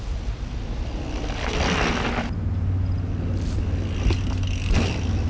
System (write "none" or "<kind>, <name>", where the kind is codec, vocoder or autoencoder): none